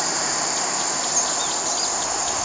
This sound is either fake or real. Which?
real